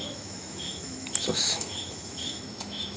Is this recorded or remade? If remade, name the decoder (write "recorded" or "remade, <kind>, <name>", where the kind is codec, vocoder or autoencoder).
remade, autoencoder, DAC-VAE